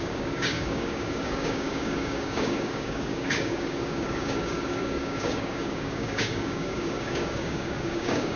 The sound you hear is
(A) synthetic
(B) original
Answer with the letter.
A